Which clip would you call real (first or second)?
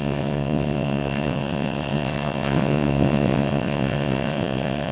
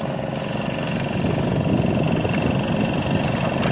second